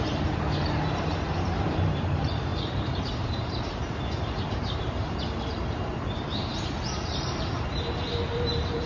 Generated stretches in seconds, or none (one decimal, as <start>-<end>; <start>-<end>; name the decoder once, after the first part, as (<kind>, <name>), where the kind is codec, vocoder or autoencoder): 0.0-8.9 (vocoder, BigVGAN v2)